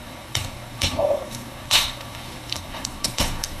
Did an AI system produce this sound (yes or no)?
yes